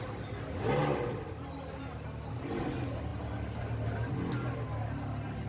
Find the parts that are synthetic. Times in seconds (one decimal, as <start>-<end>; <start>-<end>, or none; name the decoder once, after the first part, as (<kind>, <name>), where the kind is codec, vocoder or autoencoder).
none